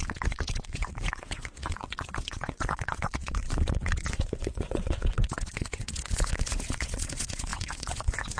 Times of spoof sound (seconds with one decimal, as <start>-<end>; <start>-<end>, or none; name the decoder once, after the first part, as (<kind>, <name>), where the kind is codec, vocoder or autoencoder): 0.0-8.4 (vocoder, WaveNeXt)